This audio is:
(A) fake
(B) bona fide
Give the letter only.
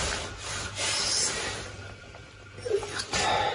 B